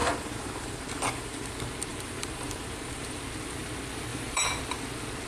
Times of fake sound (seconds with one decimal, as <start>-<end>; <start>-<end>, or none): 0.0-1.5; 1.9-3.2; 4.1-4.6